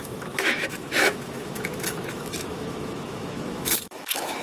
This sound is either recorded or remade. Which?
remade